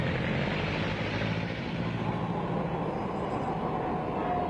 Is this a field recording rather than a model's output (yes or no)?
yes